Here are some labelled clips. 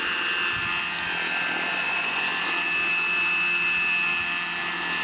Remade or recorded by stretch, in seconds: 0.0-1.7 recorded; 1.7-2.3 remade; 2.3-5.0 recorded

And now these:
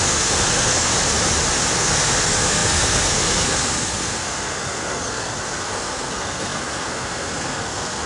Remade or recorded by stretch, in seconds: 0.0-0.9 remade; 0.9-1.7 recorded; 1.7-8.1 remade

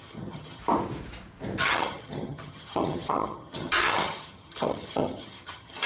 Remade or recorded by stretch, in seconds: 0.0-0.6 remade; 0.6-1.6 recorded; 1.6-5.9 remade

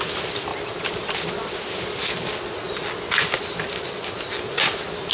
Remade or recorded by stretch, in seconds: 0.0-5.1 recorded

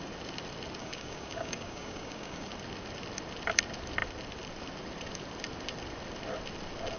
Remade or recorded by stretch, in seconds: 0.0-0.8 recorded; 0.8-2.5 remade; 2.5-7.0 recorded